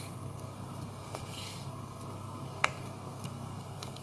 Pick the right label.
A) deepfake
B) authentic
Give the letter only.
A